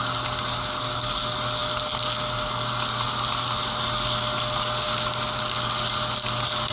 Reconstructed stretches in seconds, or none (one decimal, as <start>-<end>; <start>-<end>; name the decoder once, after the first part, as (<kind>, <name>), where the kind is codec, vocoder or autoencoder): none